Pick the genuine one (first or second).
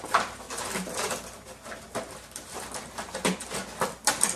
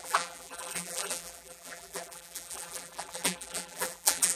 first